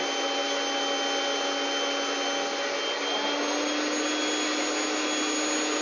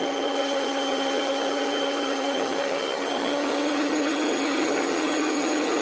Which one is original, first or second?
first